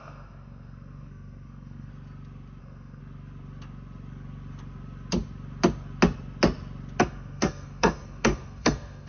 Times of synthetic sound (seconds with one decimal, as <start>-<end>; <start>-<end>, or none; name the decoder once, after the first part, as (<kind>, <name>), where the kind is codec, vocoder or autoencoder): 0.0-1.9 (codec, SNAC); 2.6-3.0; 7.0-9.1